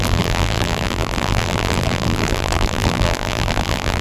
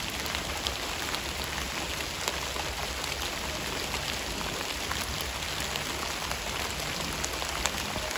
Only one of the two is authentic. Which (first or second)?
second